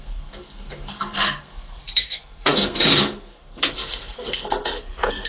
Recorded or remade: remade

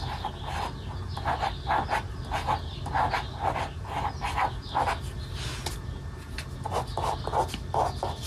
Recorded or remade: recorded